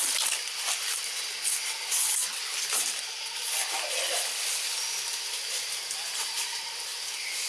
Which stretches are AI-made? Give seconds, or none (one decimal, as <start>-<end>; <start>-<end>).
none